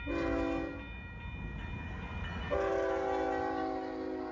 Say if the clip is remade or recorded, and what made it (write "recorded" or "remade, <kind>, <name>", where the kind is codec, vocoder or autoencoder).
recorded